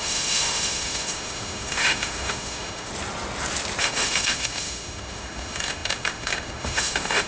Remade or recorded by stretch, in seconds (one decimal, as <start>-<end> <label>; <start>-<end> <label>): 0.0-2.9 remade; 2.9-3.8 recorded; 3.8-7.3 remade